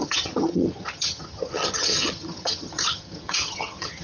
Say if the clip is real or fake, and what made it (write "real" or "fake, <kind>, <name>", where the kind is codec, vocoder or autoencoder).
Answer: fake, vocoder, HiFi-GAN